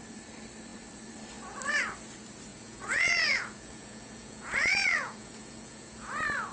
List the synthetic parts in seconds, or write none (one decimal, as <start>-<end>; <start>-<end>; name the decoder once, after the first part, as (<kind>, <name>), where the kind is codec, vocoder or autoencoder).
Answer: 2.5-6.1 (vocoder, Vocos)